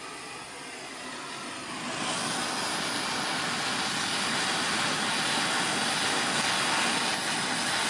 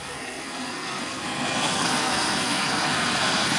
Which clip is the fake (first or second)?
second